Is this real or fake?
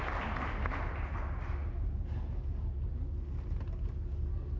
real